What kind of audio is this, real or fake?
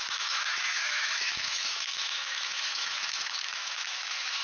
fake